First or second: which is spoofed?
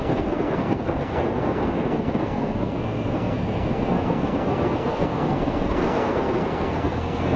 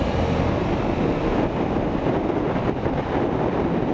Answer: first